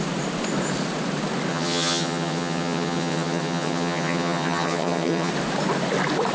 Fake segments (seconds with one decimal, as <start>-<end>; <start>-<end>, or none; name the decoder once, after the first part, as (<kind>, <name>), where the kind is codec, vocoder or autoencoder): 1.5-5.3 (vocoder, HiFi-GAN)